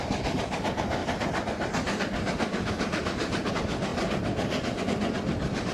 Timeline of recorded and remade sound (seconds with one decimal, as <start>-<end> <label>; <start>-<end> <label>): 0.0-5.7 recorded